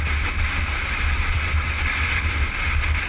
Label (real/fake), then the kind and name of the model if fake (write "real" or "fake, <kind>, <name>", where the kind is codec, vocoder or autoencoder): real